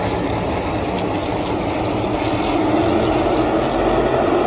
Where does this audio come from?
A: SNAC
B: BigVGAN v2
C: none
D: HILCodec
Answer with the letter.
C